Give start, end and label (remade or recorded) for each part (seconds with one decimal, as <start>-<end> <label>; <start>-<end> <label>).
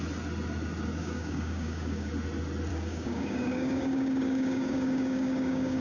0.0-1.0 recorded; 1.0-2.1 remade; 2.1-2.7 recorded; 2.7-5.8 remade